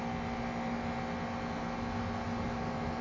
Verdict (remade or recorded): recorded